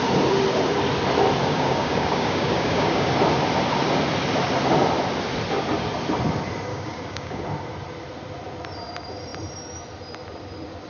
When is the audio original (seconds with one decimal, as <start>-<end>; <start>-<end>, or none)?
0.0-1.5; 3.1-6.7; 7.4-10.9